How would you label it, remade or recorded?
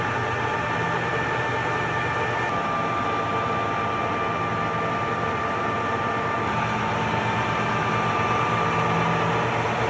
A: recorded